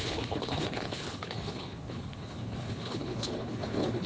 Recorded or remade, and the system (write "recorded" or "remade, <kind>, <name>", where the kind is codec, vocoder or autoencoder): remade, codec, HILCodec